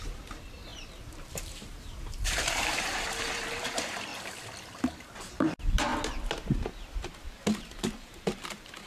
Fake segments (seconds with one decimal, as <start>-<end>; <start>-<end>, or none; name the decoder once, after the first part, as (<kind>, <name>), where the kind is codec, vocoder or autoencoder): 0.0-4.1 (vocoder, BigVGAN v2); 5.2-5.9; 7.6-8.9